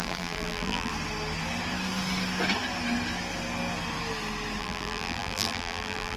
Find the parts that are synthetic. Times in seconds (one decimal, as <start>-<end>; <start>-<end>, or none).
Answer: 0.0-0.9; 4.6-6.2